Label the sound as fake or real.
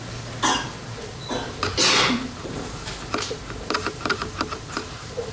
real